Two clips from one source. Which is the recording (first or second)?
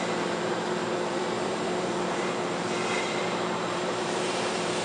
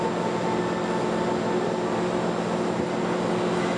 second